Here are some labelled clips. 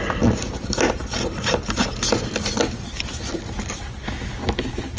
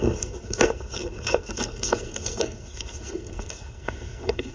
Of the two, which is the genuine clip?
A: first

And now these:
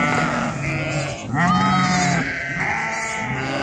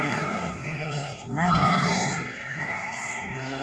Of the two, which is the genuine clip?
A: first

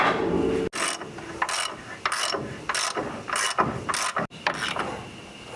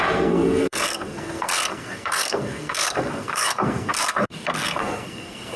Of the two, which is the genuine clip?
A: first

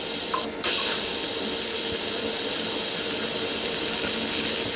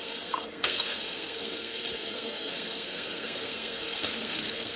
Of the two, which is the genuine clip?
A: first